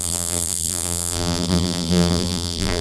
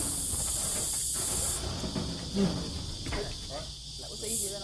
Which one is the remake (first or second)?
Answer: first